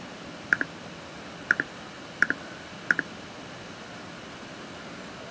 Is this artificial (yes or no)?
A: no